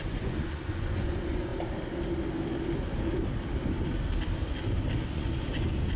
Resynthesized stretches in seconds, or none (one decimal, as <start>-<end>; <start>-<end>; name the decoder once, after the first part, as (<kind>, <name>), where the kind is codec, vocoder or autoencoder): 0.0-1.5 (vocoder, Vocos); 5.1-6.0